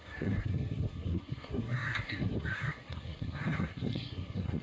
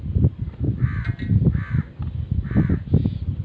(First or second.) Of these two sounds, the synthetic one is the first